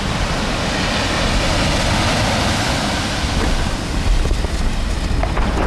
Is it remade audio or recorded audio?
recorded